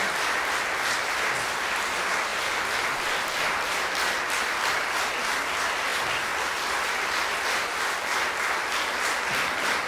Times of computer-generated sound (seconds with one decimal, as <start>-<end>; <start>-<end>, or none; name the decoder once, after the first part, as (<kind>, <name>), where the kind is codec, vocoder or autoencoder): none

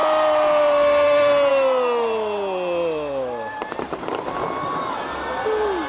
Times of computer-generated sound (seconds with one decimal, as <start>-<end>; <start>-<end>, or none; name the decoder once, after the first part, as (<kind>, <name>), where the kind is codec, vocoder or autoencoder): none

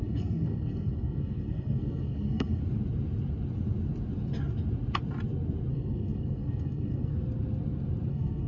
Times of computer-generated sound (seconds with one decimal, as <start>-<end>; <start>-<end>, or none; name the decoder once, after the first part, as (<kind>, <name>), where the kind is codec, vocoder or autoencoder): 0.0-2.6 (codec, SNAC); 5.7-7.1; 8.1-8.5